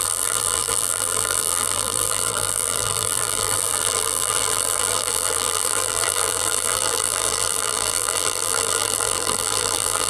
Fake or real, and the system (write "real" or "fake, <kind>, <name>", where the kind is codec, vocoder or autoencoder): fake, vocoder, BigVGAN v2